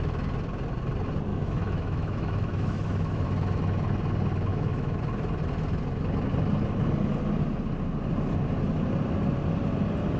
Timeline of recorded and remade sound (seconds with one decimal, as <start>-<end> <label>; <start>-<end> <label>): 0.0-1.3 recorded; 1.3-3.3 remade; 3.3-4.5 recorded; 4.5-5.0 remade; 5.0-10.2 recorded